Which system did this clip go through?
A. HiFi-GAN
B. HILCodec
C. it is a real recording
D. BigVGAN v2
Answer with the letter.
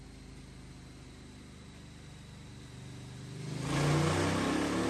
C